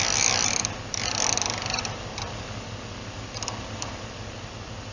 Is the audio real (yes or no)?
yes